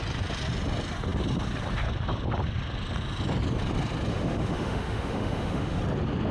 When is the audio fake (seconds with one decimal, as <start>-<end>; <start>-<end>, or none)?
4.1-5.8